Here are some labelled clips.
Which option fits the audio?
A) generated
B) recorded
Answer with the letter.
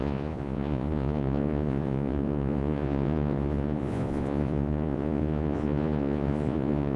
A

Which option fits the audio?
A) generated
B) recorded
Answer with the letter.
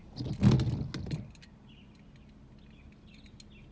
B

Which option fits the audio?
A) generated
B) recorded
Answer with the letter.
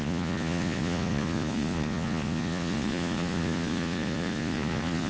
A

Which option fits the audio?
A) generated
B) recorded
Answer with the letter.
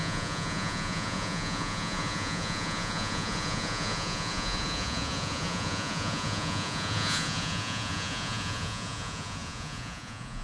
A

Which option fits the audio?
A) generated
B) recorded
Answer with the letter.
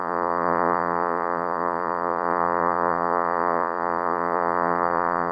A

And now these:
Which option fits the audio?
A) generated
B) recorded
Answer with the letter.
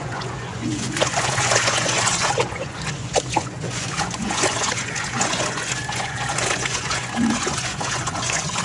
A